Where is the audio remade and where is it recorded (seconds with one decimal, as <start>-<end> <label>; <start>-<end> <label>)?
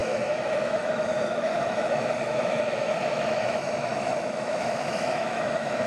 0.0-5.9 remade